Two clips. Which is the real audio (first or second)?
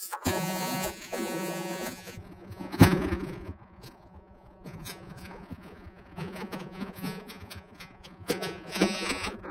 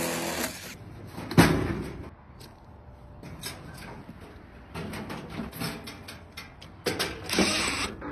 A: second